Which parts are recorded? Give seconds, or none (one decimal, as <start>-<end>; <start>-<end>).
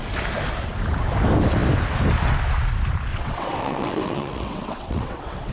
0.0-3.1